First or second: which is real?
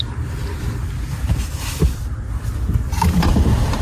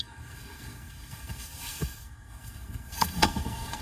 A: first